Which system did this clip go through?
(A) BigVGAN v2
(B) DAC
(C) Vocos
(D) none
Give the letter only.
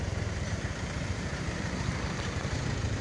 A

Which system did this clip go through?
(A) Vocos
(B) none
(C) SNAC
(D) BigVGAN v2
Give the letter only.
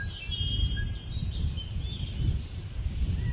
D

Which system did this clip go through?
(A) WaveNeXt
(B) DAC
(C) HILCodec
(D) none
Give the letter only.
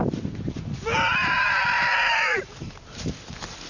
D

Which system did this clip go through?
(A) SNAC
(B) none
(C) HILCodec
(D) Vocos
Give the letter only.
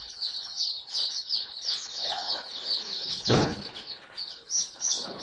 C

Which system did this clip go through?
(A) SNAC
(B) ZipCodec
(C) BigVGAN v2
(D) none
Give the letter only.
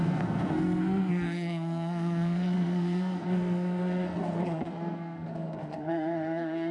A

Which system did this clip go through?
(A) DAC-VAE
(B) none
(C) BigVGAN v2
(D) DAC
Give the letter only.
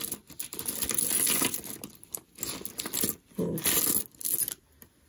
B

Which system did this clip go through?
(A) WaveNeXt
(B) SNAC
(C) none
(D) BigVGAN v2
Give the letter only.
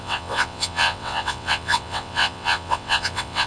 A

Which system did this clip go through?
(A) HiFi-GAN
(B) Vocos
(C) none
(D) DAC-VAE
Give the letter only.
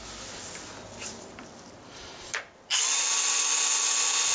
C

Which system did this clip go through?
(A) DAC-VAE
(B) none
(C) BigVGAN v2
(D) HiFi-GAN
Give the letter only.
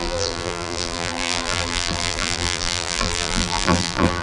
C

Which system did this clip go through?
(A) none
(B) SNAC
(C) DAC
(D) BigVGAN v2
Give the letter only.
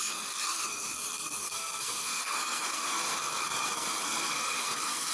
B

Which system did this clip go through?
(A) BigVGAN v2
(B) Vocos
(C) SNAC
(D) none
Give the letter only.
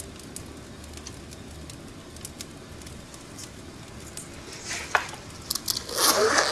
D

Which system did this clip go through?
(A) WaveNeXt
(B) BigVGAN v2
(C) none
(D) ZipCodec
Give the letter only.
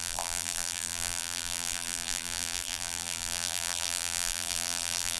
B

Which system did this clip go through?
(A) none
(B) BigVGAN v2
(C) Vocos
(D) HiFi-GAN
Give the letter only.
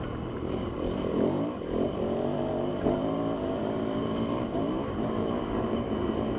B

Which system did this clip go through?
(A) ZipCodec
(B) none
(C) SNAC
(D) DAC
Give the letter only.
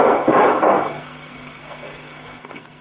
C